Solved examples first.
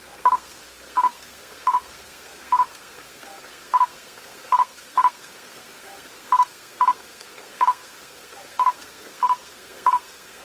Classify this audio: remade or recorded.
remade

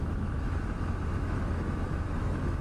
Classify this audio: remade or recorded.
remade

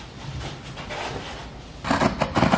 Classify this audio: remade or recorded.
recorded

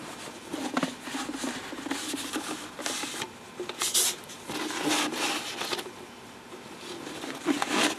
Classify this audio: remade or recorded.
recorded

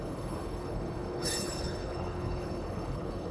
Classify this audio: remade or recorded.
remade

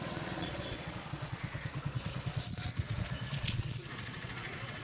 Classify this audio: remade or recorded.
remade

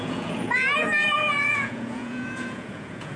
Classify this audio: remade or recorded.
remade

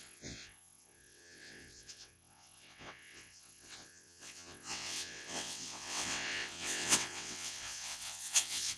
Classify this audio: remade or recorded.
remade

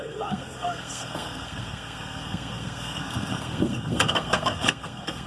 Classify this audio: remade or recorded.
remade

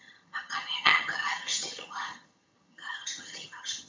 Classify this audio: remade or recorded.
remade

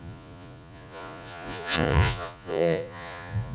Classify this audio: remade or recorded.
remade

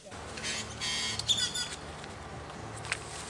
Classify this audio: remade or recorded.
recorded